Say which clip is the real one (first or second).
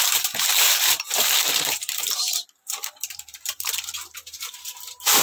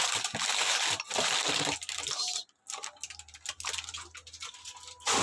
second